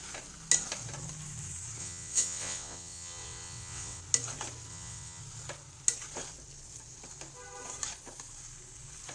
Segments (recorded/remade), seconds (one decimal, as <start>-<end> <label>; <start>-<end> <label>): 0.0-1.8 recorded; 1.8-4.0 remade; 4.0-4.7 recorded; 4.7-5.2 remade; 5.2-9.1 recorded